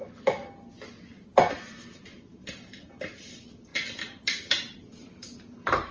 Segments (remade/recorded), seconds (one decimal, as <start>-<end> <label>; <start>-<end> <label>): 0.0-1.5 recorded; 1.5-3.7 remade; 3.7-4.9 recorded; 4.9-5.9 remade